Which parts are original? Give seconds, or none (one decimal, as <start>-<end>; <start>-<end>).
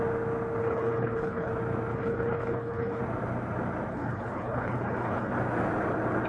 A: 0.0-0.6; 1.5-1.9; 3.0-3.9; 5.3-6.3